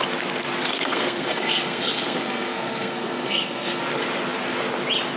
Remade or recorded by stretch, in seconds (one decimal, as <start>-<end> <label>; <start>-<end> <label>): 0.0-0.7 recorded; 0.7-3.8 remade; 3.8-5.2 recorded